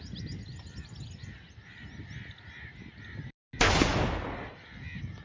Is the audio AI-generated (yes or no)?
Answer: no